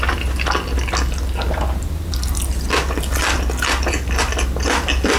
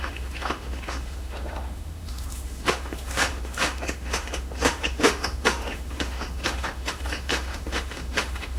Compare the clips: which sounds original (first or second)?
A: first